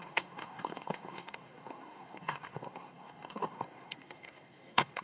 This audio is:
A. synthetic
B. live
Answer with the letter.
A